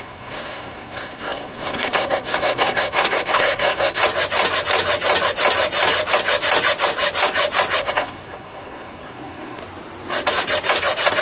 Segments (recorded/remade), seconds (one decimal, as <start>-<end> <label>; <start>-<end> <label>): 0.0-4.0 remade; 4.0-7.8 recorded; 7.8-9.6 remade; 9.6-11.2 recorded